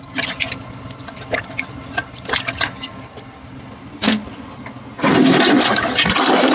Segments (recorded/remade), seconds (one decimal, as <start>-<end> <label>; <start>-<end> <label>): 0.0-4.0 recorded; 4.0-4.6 remade; 4.6-6.5 recorded